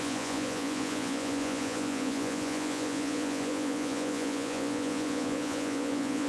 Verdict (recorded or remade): remade